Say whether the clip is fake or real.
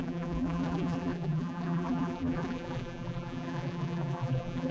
fake